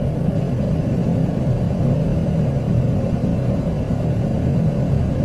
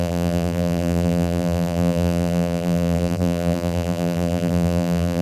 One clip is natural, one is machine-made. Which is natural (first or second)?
first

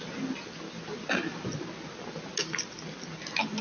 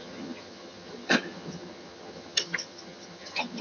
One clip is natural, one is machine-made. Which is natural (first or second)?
first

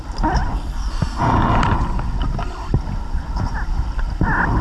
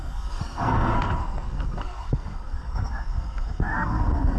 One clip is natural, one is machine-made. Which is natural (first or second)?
first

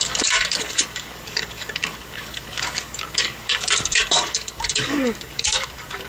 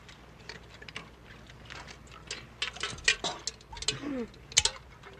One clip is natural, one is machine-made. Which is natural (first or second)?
second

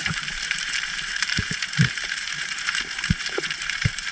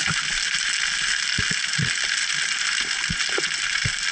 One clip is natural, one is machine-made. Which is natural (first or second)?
second